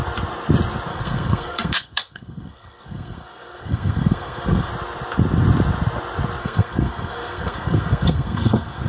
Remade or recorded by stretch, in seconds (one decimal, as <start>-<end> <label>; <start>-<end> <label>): 0.0-0.9 recorded; 0.9-4.7 remade; 4.7-6.4 recorded; 6.4-8.9 remade